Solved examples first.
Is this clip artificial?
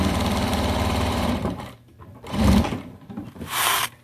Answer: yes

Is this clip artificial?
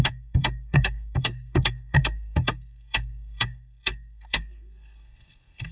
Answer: yes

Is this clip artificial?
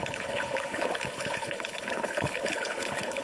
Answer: yes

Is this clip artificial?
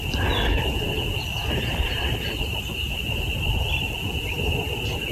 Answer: yes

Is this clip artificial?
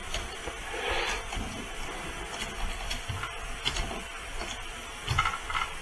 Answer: no